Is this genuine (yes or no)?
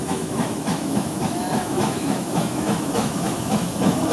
no